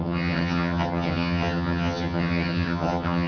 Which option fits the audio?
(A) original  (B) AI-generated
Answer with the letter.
B